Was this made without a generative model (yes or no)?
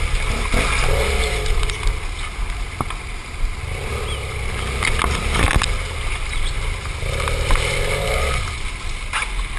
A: yes